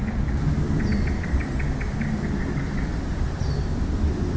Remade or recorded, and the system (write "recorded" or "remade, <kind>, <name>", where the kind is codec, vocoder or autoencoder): recorded